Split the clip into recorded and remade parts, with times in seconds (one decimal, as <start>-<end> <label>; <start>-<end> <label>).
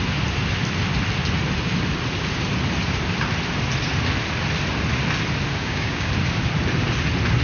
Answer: 0.0-5.6 recorded; 5.6-6.1 remade; 6.1-7.4 recorded